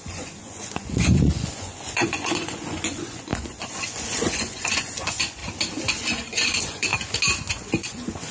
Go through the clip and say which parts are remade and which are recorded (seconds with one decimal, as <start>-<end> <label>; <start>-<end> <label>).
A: 0.0-5.4 remade; 5.4-5.9 recorded; 5.9-6.9 remade; 6.9-7.5 recorded; 7.5-8.3 remade